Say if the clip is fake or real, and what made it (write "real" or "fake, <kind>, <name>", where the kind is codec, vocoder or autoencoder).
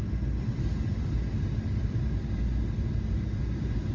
real